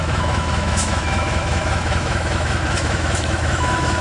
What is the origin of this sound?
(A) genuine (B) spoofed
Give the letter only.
B